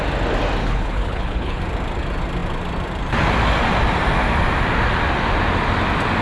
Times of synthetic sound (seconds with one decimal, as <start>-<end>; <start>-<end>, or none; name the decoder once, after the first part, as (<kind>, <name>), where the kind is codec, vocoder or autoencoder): 0.6-1.6 (codec, HILCodec)